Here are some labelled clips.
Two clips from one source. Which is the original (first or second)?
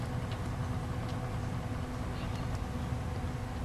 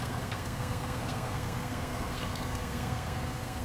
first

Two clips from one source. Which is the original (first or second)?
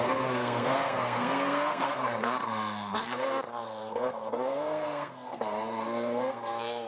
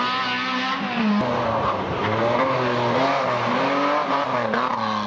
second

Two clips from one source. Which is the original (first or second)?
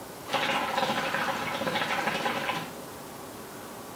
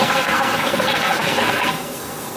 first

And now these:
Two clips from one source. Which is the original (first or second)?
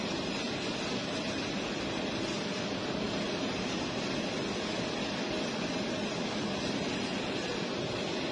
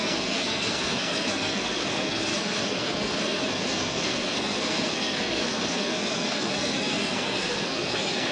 first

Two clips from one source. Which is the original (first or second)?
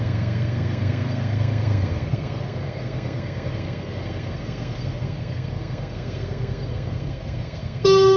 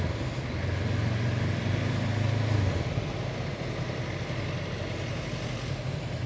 second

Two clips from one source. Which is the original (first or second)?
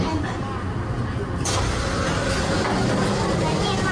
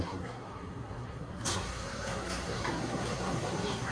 first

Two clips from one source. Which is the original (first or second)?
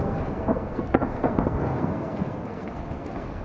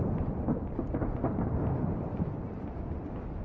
second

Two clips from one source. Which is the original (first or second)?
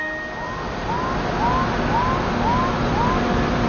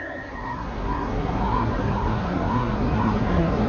first